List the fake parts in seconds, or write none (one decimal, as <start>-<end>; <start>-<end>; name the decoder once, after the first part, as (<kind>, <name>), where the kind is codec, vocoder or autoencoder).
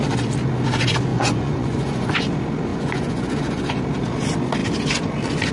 1.1-2.1 (vocoder, Vocos); 2.7-3.8